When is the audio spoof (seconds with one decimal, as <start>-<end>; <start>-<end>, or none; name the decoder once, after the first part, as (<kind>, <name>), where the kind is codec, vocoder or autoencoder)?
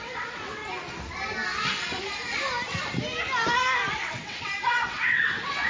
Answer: 0.0-0.6 (vocoder, WaveNeXt); 4.0-5.7